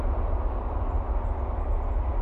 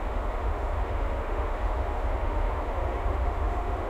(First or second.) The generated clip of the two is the second